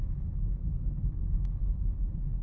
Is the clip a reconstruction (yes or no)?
yes